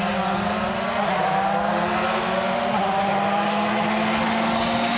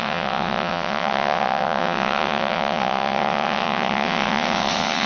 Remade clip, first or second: second